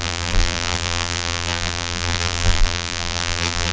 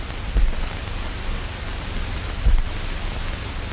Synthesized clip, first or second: first